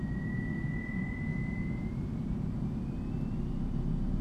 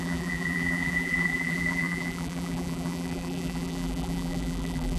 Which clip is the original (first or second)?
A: first